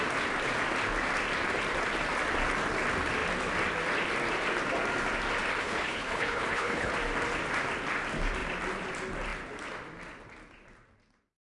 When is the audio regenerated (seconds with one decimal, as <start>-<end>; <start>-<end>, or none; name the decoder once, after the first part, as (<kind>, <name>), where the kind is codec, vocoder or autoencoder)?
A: 5.6-6.9 (codec, HILCodec)